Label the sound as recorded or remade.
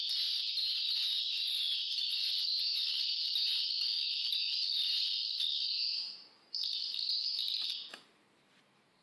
recorded